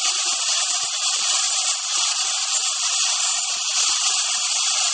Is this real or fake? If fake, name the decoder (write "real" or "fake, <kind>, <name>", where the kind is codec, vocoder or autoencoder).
real